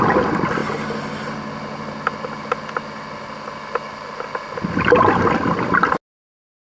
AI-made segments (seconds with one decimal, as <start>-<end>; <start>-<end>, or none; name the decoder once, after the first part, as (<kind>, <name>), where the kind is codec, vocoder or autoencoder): none